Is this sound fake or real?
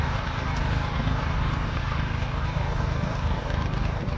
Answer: fake